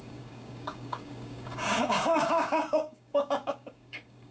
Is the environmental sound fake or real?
fake